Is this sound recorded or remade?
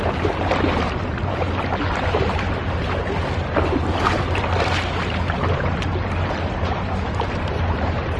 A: recorded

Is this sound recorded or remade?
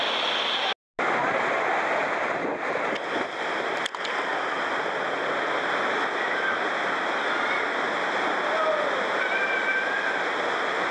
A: recorded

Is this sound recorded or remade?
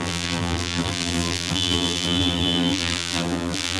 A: remade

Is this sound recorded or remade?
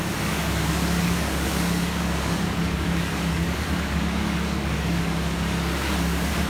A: remade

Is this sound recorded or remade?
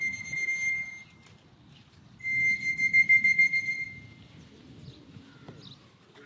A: recorded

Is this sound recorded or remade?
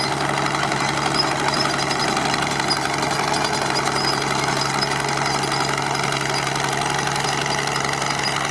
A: recorded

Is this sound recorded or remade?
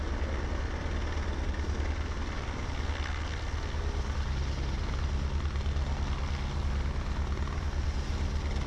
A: recorded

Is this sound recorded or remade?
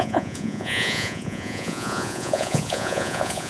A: remade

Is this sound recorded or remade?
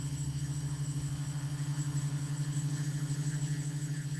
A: remade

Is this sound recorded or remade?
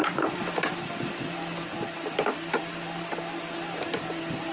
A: recorded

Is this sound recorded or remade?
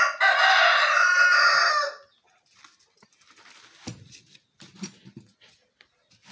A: recorded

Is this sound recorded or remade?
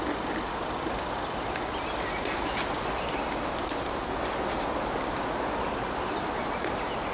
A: recorded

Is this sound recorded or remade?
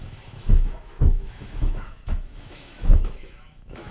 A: remade